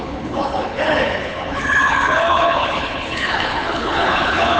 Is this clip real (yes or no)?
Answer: no